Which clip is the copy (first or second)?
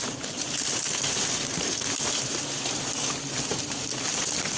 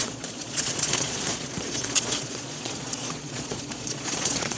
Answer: second